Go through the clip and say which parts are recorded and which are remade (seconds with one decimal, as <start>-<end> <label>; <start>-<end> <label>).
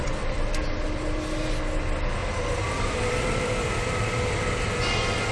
0.0-2.2 recorded; 2.2-4.8 remade; 4.8-5.3 recorded